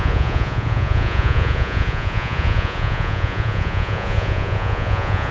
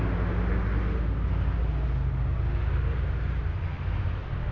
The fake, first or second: first